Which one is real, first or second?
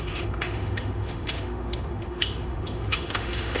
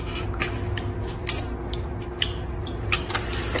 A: second